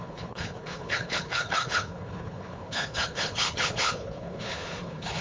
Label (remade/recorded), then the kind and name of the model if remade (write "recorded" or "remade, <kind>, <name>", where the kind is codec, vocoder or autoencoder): remade, codec, HILCodec